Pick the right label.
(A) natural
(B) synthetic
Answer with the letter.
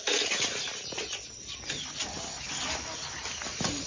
A